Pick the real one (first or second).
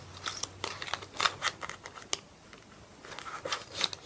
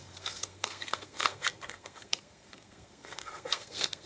first